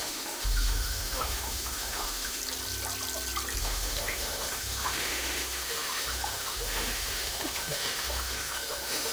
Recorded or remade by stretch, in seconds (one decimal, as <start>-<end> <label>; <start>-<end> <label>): 0.0-2.4 remade; 2.4-3.6 recorded; 3.6-9.1 remade